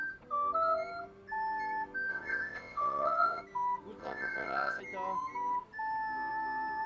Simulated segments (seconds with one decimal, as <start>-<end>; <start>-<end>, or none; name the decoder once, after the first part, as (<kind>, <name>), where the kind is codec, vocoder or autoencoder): 2.1-3.4 (vocoder, WaveNeXt); 4.0-4.8